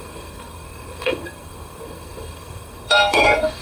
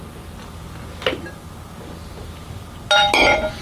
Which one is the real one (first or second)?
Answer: second